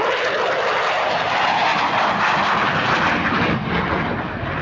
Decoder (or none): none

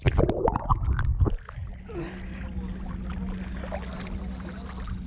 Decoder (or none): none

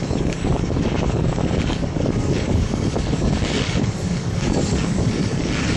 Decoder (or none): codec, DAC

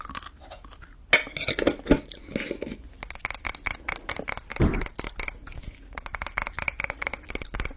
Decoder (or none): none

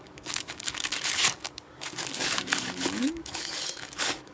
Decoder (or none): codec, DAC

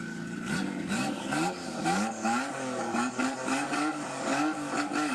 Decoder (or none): codec, DAC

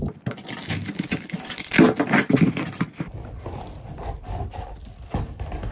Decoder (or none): none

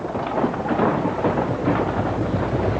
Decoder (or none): none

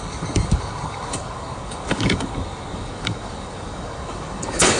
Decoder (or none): codec, DAC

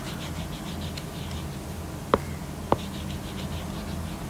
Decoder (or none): none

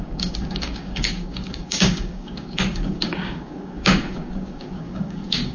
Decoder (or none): codec, DAC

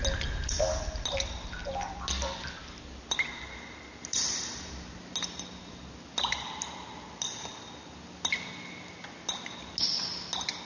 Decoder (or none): none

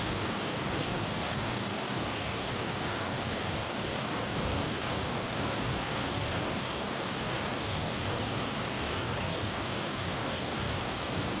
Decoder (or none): codec, DAC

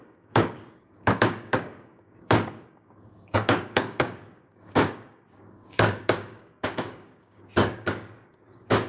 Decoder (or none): codec, DAC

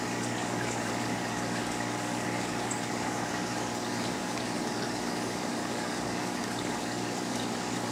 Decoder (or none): codec, DAC